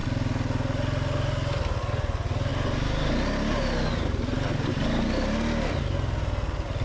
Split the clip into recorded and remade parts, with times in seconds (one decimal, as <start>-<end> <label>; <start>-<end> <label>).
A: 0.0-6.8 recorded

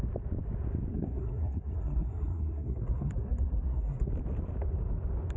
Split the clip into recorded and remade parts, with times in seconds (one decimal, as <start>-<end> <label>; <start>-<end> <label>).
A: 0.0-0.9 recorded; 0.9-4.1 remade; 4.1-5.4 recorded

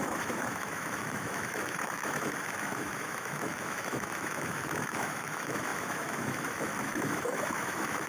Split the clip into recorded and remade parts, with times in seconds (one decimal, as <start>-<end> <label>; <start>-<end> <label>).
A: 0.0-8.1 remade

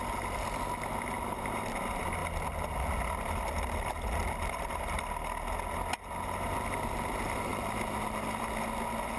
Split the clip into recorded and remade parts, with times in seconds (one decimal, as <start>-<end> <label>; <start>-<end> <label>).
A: 0.0-9.2 recorded

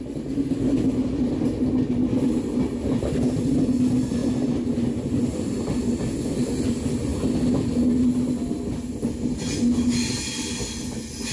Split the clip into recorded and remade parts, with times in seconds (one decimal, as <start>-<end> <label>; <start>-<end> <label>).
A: 0.0-11.3 recorded

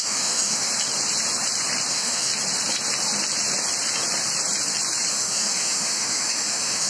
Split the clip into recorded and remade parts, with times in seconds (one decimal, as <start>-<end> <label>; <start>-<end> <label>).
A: 0.0-0.7 remade; 0.7-1.9 recorded; 1.9-2.3 remade; 2.3-5.1 recorded; 5.1-6.9 remade

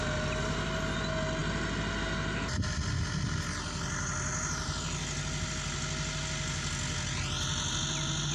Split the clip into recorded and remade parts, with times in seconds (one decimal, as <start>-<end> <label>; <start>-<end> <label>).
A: 0.0-8.3 recorded

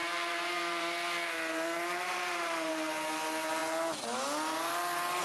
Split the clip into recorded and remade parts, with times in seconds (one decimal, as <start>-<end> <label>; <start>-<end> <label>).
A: 0.0-2.7 remade; 2.7-5.2 recorded